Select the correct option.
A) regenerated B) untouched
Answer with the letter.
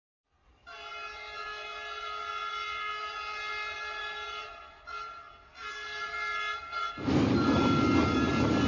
B